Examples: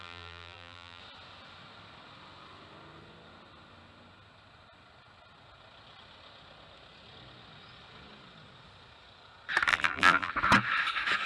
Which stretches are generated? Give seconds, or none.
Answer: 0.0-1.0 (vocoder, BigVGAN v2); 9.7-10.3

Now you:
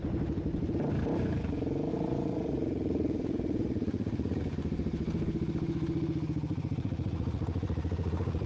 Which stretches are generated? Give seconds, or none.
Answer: 1.9-4.4 (vocoder, Vocos); 6.5-8.5

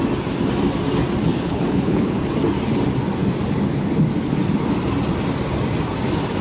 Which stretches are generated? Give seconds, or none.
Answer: 1.3-2.2 (codec, HILCodec)

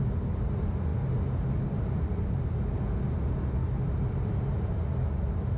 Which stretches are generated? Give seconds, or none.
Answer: none

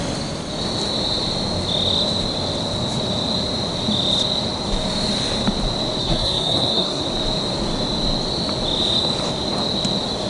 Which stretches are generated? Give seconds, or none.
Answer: 6.0-7.0 (codec, SNAC)

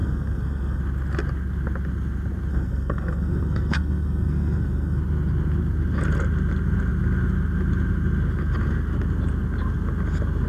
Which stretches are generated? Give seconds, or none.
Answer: 0.0-0.8 (codec, SNAC); 2.5-5.0

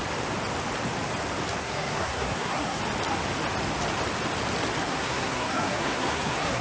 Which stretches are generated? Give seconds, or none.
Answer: 1.6-2.8 (codec, SNAC); 4.8-6.6

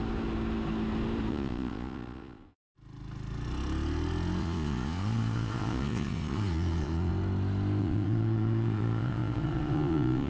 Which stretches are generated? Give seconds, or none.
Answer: 1.3-2.6 (vocoder, Vocos); 4.4-7.1; 7.8-10.3